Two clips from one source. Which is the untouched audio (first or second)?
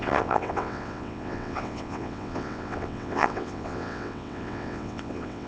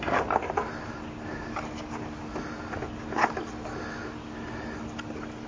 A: second